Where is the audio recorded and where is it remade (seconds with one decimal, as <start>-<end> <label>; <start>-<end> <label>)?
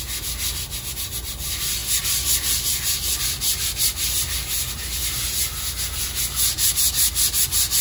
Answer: 0.0-7.8 recorded